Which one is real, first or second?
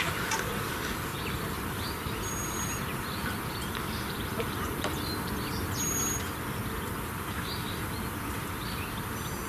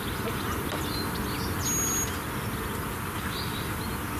second